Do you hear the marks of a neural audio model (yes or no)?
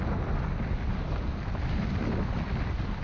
no